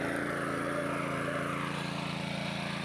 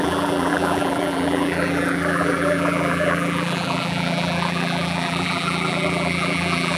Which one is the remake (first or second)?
second